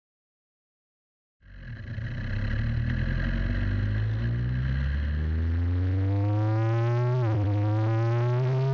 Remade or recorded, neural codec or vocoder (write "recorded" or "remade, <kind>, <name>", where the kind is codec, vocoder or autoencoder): recorded